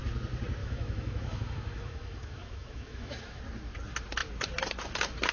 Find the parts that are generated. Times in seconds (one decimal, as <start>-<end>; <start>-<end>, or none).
0.6-3.4